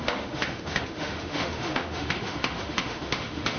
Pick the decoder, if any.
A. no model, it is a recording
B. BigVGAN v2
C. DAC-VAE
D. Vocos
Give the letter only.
C